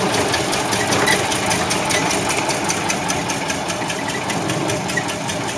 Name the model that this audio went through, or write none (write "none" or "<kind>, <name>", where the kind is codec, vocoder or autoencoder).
none